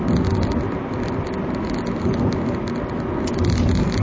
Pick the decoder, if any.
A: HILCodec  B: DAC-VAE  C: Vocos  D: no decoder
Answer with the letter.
D